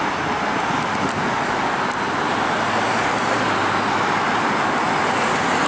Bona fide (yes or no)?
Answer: yes